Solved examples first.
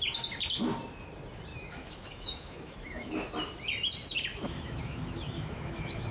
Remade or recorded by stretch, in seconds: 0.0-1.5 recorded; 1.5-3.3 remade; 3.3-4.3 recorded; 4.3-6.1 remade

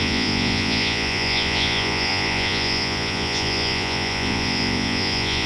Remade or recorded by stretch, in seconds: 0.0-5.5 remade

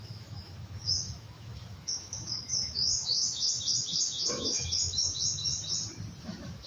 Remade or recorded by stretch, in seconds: 0.0-5.5 remade; 5.5-6.2 recorded; 6.2-6.7 remade